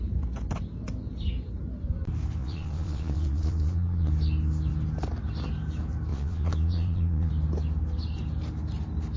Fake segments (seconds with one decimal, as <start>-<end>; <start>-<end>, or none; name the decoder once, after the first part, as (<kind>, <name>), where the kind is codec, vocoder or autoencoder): 2.4-4.1 (vocoder, Vocos); 6.1-7.3